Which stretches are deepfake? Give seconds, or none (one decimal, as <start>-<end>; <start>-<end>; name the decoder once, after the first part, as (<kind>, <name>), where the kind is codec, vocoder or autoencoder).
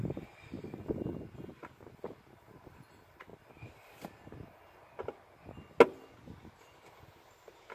none